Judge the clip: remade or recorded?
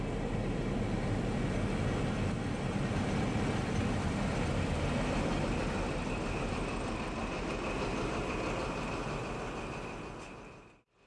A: recorded